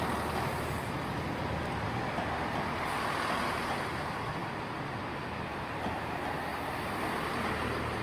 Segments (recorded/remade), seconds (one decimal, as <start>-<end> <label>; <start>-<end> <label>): 0.0-4.4 recorded; 4.4-6.1 remade; 6.1-6.5 recorded; 6.5-7.5 remade; 7.5-8.0 recorded